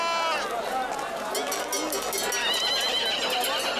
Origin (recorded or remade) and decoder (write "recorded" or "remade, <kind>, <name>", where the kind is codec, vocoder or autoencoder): recorded